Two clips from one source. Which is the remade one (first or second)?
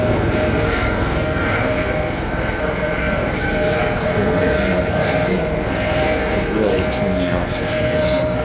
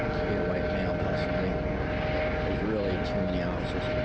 first